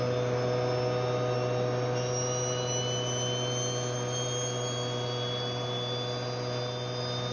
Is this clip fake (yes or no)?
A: no